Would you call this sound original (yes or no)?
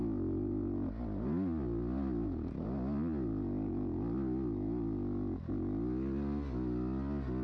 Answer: yes